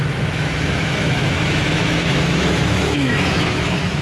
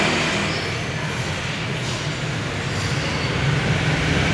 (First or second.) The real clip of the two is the second